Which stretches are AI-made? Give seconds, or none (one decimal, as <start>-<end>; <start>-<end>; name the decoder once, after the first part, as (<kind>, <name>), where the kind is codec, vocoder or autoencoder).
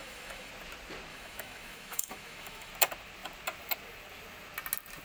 0.0-0.5 (autoencoder, DAC-VAE); 1.1-2.7